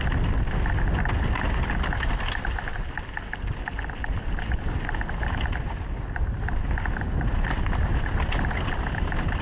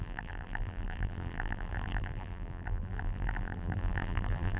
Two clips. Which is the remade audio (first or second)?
second